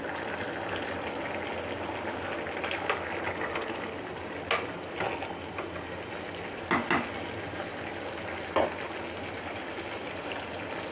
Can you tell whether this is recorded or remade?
recorded